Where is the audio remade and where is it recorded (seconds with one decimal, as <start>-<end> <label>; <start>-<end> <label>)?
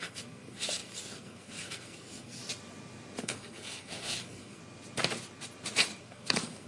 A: 0.0-2.4 remade; 2.4-3.2 recorded; 3.2-4.6 remade; 4.6-6.0 recorded; 6.0-6.7 remade